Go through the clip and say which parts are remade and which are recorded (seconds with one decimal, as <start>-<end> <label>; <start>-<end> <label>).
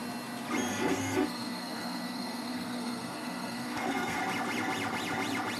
0.0-0.7 recorded; 0.7-4.2 remade; 4.2-5.6 recorded